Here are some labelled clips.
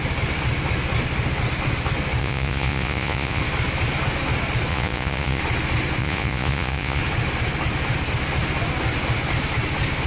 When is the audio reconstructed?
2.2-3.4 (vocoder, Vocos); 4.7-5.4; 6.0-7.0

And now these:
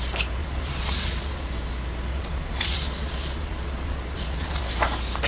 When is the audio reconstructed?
0.4-1.5 (vocoder, Vocos); 2.1-4.6

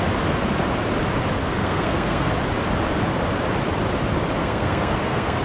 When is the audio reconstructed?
1.4-2.3 (codec, SNAC); 4.4-5.4

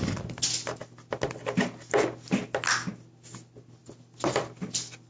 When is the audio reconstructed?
none